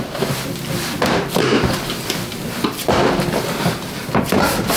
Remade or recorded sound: remade